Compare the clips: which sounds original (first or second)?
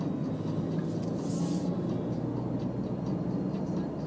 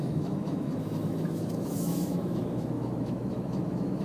first